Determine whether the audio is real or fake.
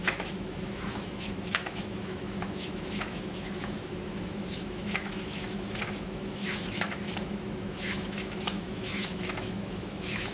fake